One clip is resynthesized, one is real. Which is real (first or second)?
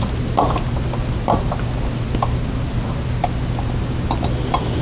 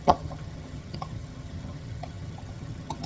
first